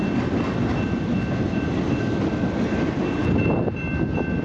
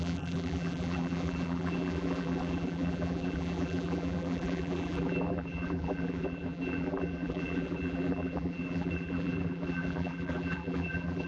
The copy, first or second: second